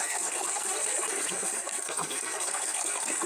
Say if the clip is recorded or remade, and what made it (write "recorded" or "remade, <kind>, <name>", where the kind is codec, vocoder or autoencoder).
remade, codec, SNAC